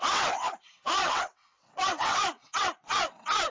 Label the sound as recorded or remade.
remade